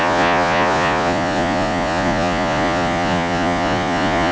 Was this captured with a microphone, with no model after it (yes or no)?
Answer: no